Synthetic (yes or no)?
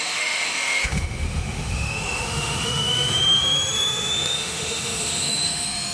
yes